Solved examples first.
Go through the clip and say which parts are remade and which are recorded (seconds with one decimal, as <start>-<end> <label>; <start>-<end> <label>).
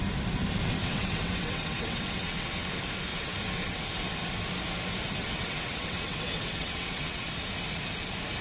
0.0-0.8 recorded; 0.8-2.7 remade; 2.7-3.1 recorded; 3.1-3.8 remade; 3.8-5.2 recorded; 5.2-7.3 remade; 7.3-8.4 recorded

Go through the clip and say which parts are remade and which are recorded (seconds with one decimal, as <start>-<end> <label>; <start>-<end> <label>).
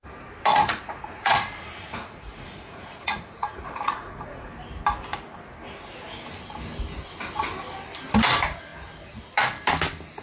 0.0-0.5 recorded; 0.5-4.5 remade; 4.5-10.2 recorded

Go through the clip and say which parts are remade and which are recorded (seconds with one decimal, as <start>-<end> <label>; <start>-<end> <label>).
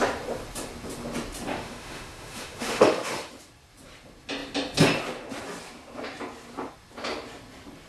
0.0-1.5 recorded; 1.5-3.3 remade; 3.3-7.9 recorded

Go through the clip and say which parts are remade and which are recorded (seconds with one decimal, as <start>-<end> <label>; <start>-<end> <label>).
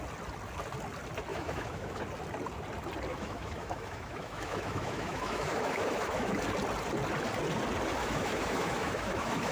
0.0-1.3 recorded; 1.3-2.0 remade; 2.0-3.1 recorded; 3.1-6.3 remade; 6.3-8.0 recorded; 8.0-9.5 remade